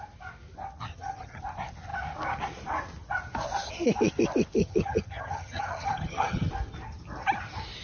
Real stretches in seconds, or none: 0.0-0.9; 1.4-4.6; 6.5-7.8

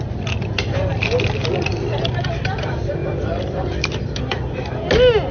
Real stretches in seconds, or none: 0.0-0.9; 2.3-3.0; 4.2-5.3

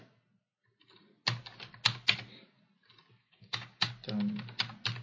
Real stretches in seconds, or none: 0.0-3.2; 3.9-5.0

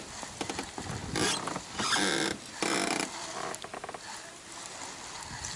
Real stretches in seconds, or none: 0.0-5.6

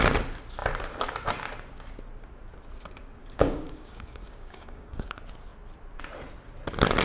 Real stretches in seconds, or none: 0.0-3.2; 5.1-7.0

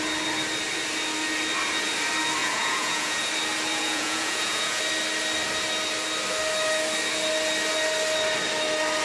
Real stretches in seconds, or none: 0.0-2.4; 3.3-3.7; 4.8-9.0